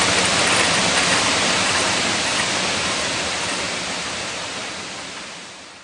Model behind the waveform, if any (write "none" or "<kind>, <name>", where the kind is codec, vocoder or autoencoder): none